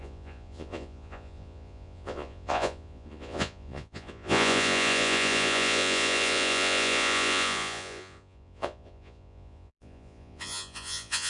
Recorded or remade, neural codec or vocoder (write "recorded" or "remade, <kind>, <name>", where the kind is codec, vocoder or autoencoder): remade, vocoder, Vocos